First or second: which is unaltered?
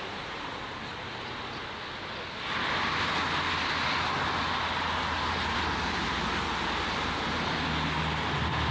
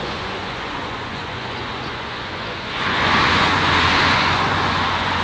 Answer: first